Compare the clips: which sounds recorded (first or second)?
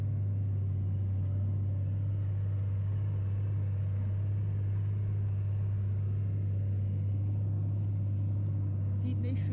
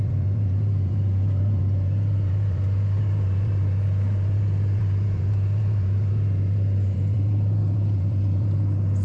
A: first